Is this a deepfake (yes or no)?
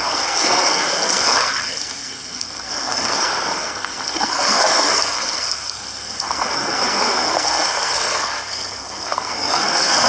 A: yes